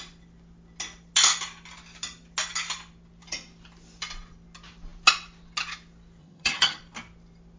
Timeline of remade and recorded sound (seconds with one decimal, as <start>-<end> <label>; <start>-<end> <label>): 0.0-6.2 recorded; 6.2-6.8 remade; 6.8-7.6 recorded